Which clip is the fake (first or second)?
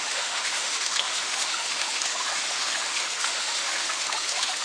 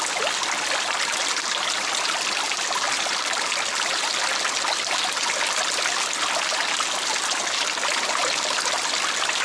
first